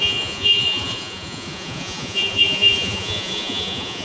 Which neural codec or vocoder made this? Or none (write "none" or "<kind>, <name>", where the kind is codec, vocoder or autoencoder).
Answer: vocoder, Vocos